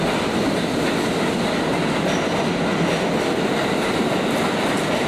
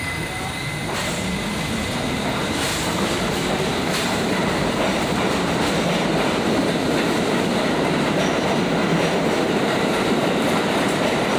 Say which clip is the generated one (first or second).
second